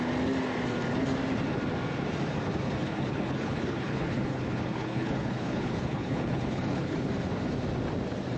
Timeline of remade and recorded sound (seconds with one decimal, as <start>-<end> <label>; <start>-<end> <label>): 0.0-2.8 recorded; 2.8-7.1 remade; 7.1-8.4 recorded